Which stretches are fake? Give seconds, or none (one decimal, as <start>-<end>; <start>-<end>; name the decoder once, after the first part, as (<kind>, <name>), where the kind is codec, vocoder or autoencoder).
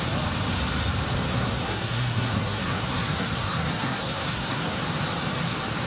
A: 1.3-4.8 (codec, SNAC)